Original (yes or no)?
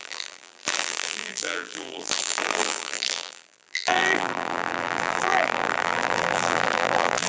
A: no